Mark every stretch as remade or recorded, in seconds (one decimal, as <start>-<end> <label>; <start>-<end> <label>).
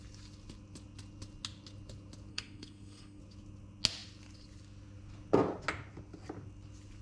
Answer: 0.0-2.3 recorded; 2.3-3.2 remade; 3.2-7.0 recorded